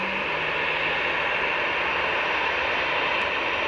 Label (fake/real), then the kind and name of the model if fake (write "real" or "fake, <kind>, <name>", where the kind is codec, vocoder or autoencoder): real